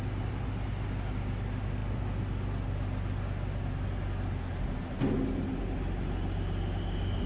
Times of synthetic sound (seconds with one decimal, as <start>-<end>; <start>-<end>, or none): none